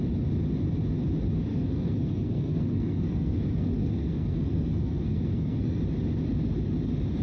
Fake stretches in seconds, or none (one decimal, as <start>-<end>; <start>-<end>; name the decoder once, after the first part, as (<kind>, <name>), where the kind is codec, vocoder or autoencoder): 1.5-5.8 (codec, SNAC)